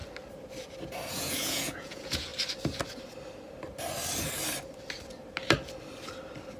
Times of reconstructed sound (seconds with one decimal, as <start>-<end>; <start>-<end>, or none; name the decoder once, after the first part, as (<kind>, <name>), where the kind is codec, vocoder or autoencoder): 1.1-2.3 (vocoder, Vocos)